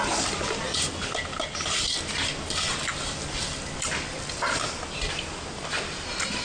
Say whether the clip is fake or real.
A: real